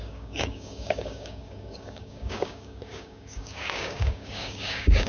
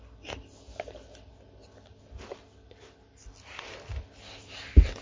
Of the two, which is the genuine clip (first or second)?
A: second